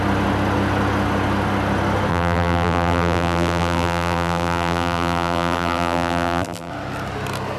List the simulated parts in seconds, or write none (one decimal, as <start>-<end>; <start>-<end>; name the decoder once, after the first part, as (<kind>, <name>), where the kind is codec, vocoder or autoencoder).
2.1-6.7 (vocoder, BigVGAN v2)